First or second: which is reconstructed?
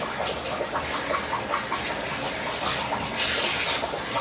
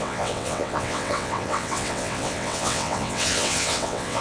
second